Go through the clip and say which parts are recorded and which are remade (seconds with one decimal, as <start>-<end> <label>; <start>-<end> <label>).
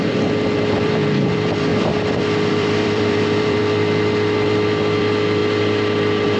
0.0-1.7 remade; 1.7-2.5 recorded; 2.5-3.6 remade; 3.6-5.0 recorded; 5.0-5.4 remade; 5.4-6.4 recorded